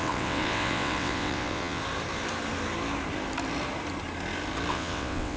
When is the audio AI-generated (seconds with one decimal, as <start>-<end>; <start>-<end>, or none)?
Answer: 0.0-1.8; 4.7-5.4